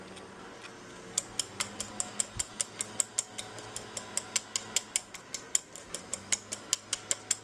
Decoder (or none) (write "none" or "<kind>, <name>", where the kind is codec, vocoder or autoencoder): none